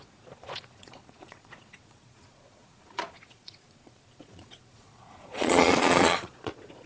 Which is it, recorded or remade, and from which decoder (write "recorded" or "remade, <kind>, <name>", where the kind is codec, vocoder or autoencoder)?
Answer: remade, vocoder, Vocos